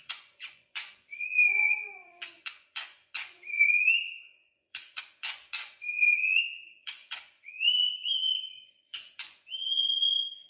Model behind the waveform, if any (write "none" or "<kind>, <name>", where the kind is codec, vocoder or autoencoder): vocoder, Vocos